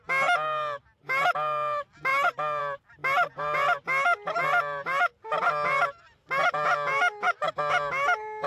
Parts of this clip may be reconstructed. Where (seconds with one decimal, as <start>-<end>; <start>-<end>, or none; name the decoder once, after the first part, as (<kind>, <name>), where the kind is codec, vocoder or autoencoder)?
none